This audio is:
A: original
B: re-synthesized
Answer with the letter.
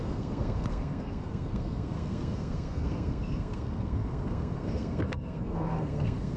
B